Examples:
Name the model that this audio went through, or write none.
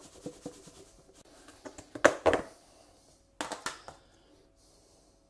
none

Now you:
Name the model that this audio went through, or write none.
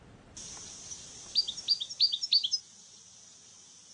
none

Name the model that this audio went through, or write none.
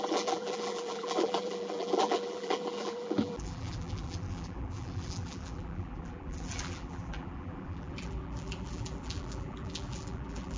vocoder, BigVGAN v2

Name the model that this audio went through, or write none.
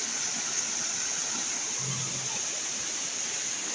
none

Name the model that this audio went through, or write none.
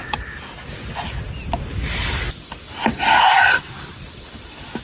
none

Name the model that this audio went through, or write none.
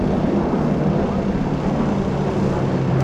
none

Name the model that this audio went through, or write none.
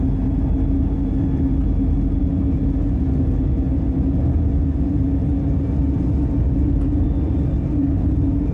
none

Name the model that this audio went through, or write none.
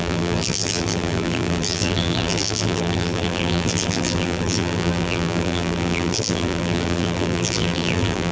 vocoder, BigVGAN v2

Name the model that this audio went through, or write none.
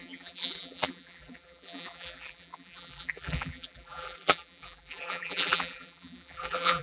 vocoder, BigVGAN v2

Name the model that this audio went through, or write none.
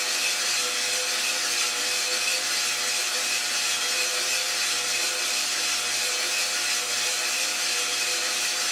none